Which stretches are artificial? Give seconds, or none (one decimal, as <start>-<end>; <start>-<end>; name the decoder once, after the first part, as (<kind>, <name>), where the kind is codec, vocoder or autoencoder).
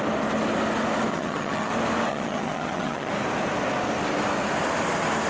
1.1-1.7 (vocoder, HiFi-GAN); 2.1-3.1